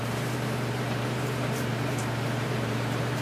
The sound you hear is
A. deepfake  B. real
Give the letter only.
A